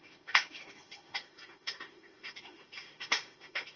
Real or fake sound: fake